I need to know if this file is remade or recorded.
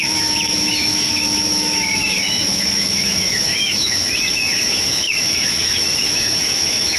remade